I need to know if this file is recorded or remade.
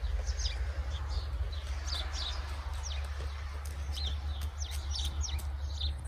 recorded